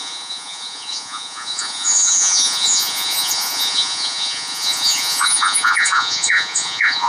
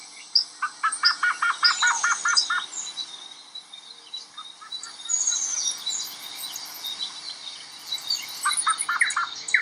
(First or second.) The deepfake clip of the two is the first